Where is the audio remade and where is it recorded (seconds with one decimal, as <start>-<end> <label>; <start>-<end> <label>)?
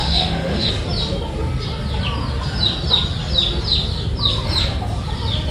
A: 0.0-0.7 remade; 0.7-5.5 recorded